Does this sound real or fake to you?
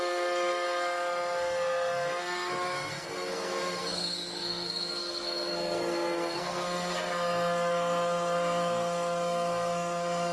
fake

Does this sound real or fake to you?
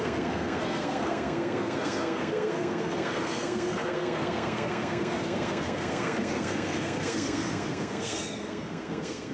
fake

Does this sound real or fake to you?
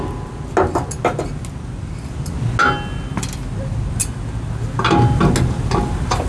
real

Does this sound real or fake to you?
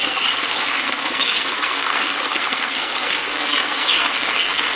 fake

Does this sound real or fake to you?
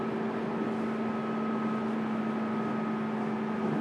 real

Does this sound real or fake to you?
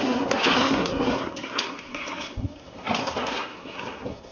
fake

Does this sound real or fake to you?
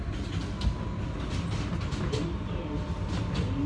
real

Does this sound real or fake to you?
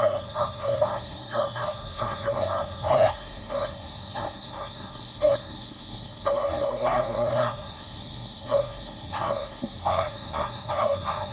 fake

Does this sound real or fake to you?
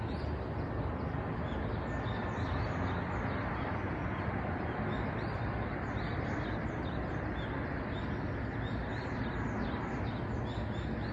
real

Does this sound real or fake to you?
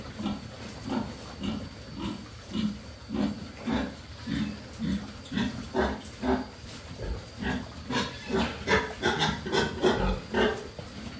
real